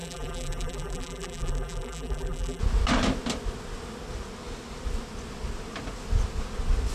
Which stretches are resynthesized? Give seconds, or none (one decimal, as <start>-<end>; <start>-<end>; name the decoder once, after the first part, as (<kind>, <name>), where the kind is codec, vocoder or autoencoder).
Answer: 0.0-2.6 (vocoder, BigVGAN v2)